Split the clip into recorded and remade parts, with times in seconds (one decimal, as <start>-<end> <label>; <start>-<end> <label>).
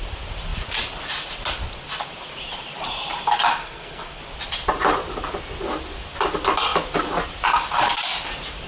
0.0-3.6 recorded; 3.6-4.2 remade; 4.2-8.7 recorded